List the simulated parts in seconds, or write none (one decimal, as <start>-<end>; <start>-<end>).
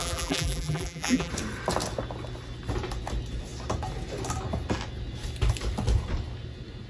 0.0-1.3